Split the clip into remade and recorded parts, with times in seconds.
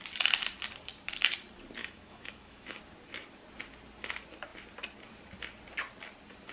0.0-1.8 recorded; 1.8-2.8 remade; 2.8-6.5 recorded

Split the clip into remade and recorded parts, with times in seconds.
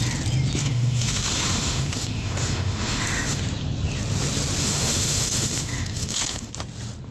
0.0-0.6 recorded; 0.6-3.4 remade; 3.4-4.6 recorded; 4.6-6.5 remade; 6.5-7.1 recorded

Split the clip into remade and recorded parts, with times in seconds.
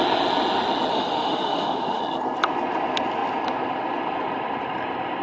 0.0-0.9 recorded; 0.9-2.0 remade; 2.0-5.2 recorded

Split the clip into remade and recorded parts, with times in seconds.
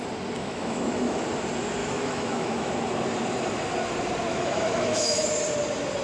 0.0-0.4 recorded; 0.4-1.2 remade; 1.2-1.8 recorded; 1.8-2.7 remade; 2.7-4.3 recorded; 4.3-5.4 remade; 5.4-6.0 recorded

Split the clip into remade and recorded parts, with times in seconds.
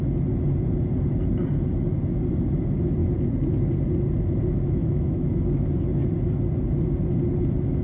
0.0-4.8 recorded; 4.8-5.4 remade; 5.4-7.8 recorded